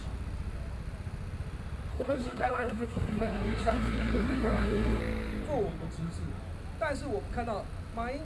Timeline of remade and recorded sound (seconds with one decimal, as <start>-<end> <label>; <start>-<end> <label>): 0.0-1.9 recorded; 1.9-5.0 remade; 5.0-8.2 recorded